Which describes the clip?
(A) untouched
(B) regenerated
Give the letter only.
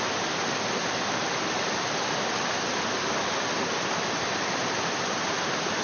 A